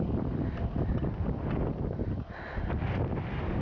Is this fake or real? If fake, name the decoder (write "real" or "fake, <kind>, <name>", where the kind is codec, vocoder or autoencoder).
real